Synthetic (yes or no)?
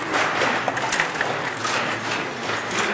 no